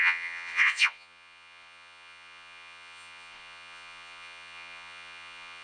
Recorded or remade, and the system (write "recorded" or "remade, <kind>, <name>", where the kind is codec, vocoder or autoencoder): remade, vocoder, Vocos